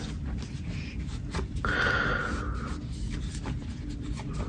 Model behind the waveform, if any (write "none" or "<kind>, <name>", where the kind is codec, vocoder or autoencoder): none